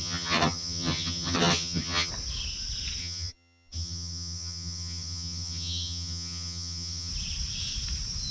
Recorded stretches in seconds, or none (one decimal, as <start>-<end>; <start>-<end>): 2.1-3.0; 7.1-8.3